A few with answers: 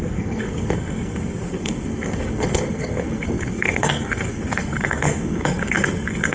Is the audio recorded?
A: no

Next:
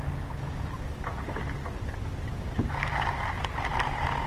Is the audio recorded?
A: yes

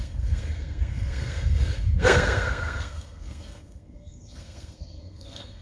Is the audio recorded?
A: no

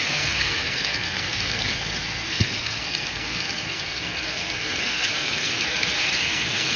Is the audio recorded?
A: no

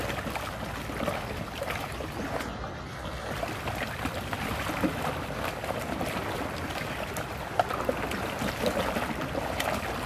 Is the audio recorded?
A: yes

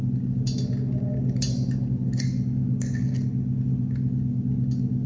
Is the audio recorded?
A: yes